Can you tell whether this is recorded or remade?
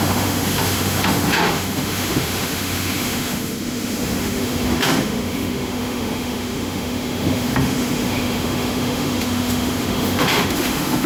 remade